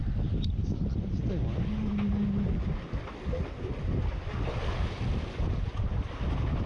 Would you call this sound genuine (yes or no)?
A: yes